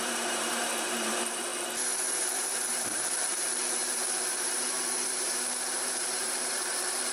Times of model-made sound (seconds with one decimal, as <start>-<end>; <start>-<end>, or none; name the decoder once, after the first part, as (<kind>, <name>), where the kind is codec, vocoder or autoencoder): 0.0-1.5 (vocoder, BigVGAN v2); 2.2-7.1